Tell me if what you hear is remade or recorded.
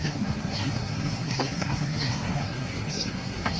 remade